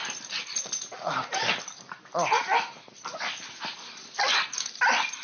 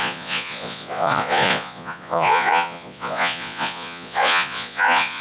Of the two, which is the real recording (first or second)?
first